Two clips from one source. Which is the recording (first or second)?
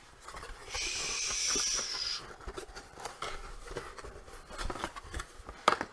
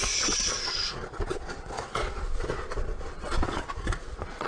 first